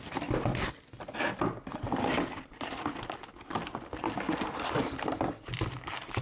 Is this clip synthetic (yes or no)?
no